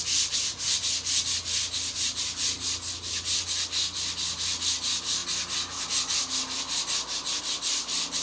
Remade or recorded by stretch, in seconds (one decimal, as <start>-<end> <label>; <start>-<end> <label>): 0.0-8.2 recorded